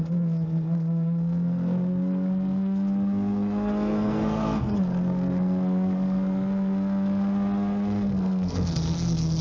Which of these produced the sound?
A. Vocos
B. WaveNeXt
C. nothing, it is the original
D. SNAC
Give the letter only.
D